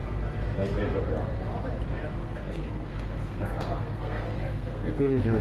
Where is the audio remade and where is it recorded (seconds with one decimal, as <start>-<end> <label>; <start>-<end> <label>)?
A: 0.0-2.2 recorded; 2.2-5.4 remade